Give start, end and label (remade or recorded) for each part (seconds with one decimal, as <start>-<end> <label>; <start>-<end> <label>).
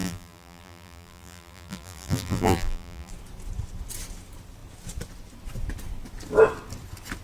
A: 0.0-3.1 remade; 3.1-7.2 recorded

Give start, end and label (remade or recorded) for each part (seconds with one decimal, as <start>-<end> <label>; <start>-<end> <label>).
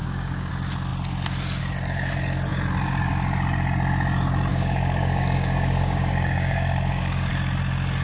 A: 0.0-0.5 remade; 0.5-4.5 recorded; 4.5-7.3 remade; 7.3-8.0 recorded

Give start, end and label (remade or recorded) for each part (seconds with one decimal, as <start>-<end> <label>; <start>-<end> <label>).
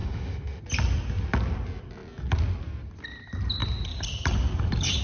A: 0.0-0.6 remade; 0.6-5.0 recorded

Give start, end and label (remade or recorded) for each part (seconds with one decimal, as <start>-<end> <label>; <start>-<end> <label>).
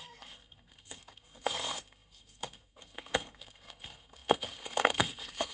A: 0.0-5.5 remade